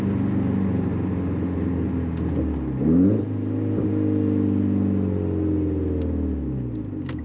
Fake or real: real